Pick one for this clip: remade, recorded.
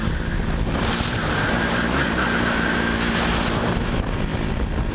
recorded